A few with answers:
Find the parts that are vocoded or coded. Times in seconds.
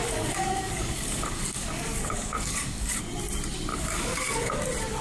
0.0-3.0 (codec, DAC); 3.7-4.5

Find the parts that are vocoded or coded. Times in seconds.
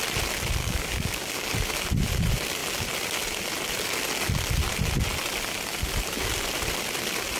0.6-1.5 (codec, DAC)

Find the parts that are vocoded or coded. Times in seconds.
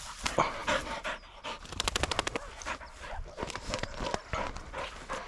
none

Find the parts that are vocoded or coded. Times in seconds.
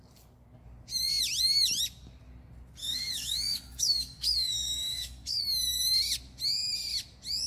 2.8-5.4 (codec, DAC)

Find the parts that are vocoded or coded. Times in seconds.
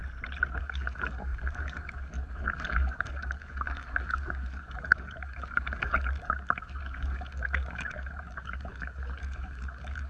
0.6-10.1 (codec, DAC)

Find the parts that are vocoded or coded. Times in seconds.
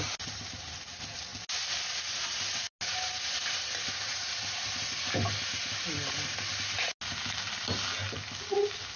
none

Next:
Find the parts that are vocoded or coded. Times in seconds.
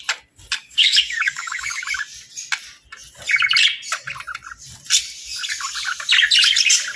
0.6-1.8 (codec, DAC)